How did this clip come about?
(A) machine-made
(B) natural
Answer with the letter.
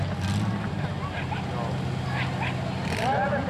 B